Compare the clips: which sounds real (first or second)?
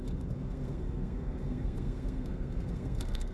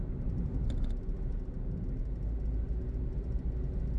second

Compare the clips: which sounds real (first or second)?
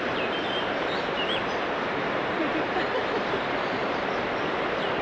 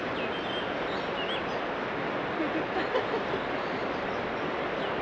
second